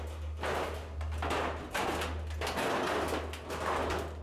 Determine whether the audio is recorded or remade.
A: recorded